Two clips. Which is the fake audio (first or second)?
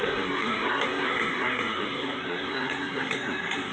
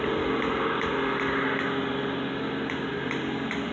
first